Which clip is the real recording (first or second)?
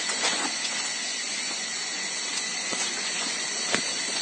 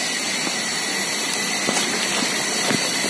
second